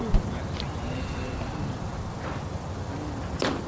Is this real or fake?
real